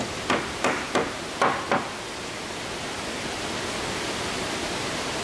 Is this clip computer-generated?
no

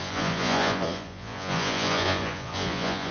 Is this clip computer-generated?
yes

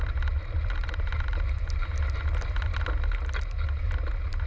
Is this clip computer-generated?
no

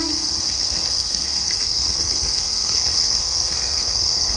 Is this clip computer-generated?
yes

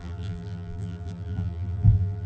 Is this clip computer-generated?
yes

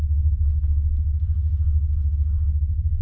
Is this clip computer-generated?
no